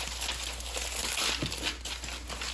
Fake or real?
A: real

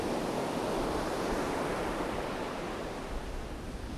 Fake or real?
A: real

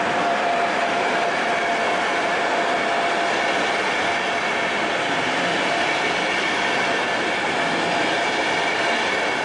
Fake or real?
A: real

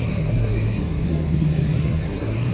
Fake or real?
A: fake